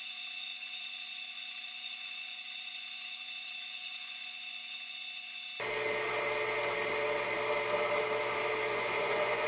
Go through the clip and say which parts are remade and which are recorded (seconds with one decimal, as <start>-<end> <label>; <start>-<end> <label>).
0.0-5.4 remade; 5.4-8.7 recorded; 8.7-9.5 remade